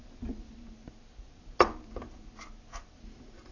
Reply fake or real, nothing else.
real